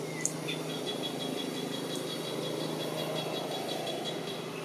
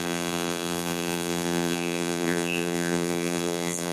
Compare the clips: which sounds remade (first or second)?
second